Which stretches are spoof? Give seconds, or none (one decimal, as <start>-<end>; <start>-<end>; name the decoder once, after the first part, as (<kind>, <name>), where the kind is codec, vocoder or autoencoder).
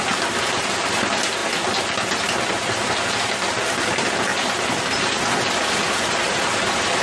4.3-5.2 (vocoder, BigVGAN v2)